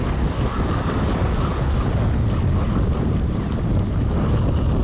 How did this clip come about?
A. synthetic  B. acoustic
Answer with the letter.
B